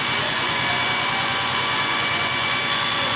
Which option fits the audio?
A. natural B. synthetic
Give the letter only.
B